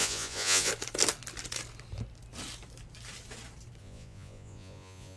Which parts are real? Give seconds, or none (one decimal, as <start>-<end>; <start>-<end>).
0.7-3.8